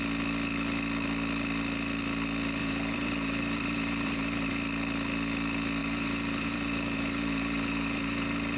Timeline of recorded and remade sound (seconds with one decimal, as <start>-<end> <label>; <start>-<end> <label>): 0.0-2.6 recorded; 2.6-4.5 remade; 4.5-5.8 recorded; 5.8-8.6 remade